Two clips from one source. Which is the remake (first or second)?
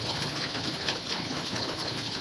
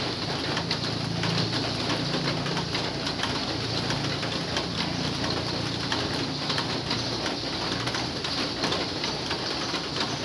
first